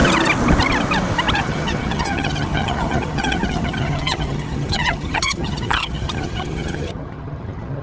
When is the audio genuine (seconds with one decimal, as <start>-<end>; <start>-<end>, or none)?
0.0-1.4